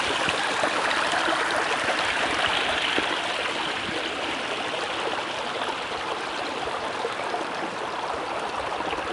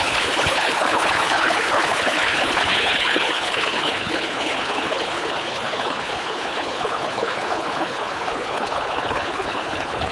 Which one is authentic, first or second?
first